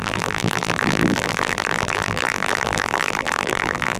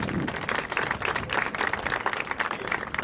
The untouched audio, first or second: second